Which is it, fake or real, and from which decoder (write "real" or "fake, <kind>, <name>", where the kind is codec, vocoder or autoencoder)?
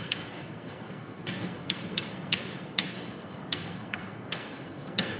fake, codec, SNAC